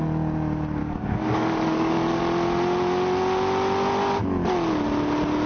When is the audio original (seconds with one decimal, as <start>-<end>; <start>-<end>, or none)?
0.0-0.8; 2.2-5.5